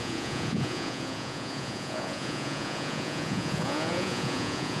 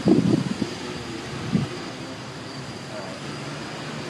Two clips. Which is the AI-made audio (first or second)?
first